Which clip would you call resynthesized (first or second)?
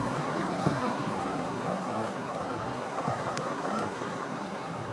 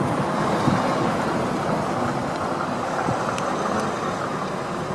first